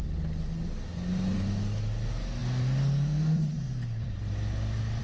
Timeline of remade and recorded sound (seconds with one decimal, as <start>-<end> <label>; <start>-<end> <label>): 0.0-5.0 recorded